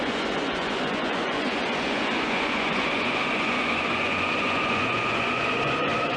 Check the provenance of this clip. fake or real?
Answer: fake